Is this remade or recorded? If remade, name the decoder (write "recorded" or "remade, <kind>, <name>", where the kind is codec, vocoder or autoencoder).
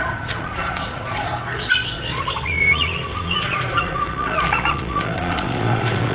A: remade, vocoder, Vocos